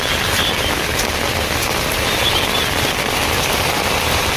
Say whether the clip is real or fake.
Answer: real